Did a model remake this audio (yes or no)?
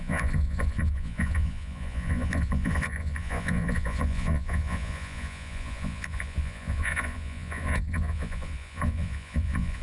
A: yes